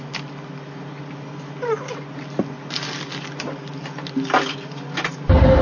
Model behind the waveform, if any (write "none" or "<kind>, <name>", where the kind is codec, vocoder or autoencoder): none